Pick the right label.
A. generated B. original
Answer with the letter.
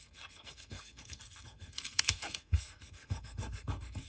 A